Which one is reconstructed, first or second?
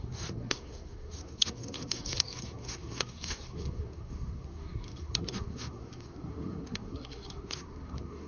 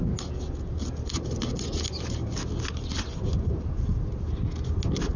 first